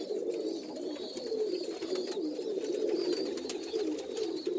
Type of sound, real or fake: real